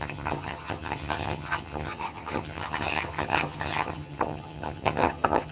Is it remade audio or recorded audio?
remade